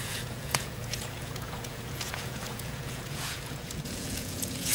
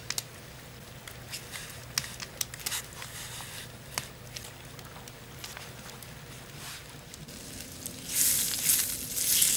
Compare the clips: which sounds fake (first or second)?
first